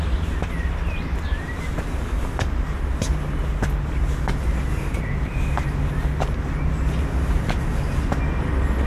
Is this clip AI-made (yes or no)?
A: no